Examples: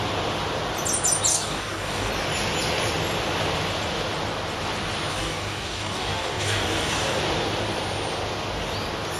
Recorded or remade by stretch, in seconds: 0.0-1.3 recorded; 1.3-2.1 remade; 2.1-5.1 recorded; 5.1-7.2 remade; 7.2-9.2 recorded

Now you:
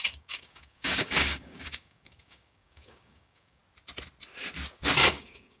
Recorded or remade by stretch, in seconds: 0.0-3.6 remade; 3.6-5.1 recorded; 5.1-5.6 remade

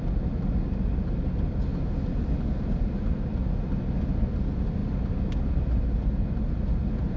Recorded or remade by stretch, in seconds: 0.0-7.2 recorded

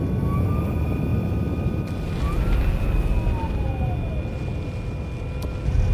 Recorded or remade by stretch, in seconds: 0.0-5.9 recorded

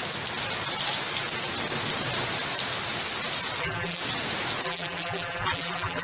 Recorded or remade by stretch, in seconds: 0.0-3.6 recorded; 3.6-4.0 remade; 4.0-4.6 recorded; 4.6-6.0 remade

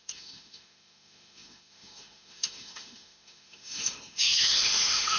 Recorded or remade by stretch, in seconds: 0.0-5.2 remade